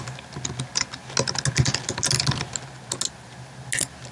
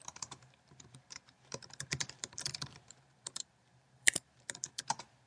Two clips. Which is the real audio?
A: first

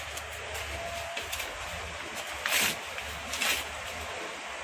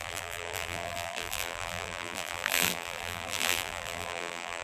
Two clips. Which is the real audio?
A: first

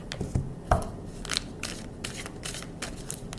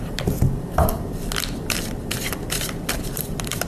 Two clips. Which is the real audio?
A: first